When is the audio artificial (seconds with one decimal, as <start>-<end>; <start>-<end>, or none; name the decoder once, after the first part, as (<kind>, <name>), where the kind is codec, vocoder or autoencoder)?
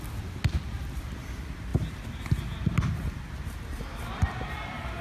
none